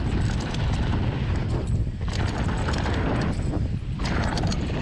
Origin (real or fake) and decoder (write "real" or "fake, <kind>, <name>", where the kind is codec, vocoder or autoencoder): real